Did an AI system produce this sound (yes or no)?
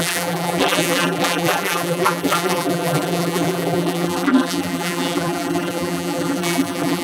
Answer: yes